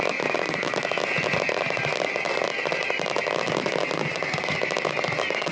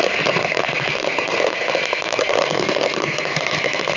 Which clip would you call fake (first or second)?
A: second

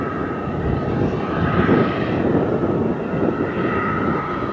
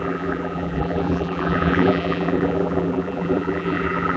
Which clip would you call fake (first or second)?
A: second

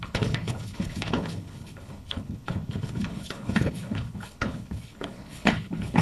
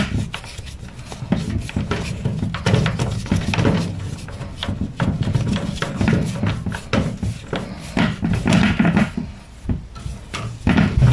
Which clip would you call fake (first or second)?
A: first